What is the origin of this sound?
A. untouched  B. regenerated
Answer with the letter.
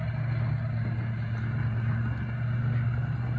A